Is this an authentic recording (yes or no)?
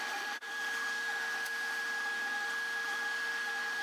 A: no